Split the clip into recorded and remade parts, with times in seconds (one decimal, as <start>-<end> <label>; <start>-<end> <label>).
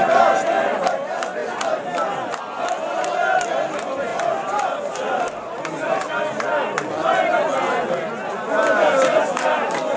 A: 0.0-4.1 recorded; 4.1-5.1 remade; 5.1-10.0 recorded